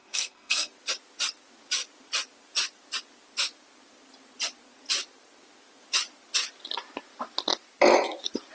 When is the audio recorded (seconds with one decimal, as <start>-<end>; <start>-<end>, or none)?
0.7-8.5

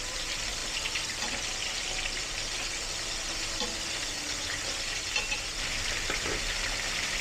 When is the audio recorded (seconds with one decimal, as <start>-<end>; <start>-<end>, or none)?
0.0-7.2